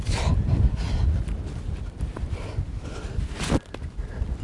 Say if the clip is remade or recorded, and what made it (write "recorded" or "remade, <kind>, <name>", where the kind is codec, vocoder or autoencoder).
recorded